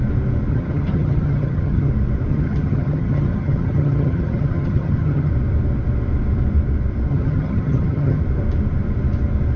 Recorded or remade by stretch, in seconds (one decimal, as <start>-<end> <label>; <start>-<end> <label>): 0.0-0.5 recorded; 0.5-1.9 remade; 1.9-2.3 recorded; 2.3-5.3 remade; 5.3-7.1 recorded; 7.1-8.2 remade; 8.2-9.6 recorded